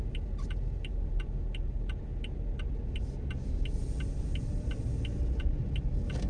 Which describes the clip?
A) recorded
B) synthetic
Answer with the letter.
A